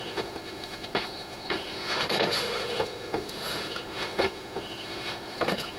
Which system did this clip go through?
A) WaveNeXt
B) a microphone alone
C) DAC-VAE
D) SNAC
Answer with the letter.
C